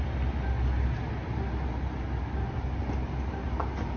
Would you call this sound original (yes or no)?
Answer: yes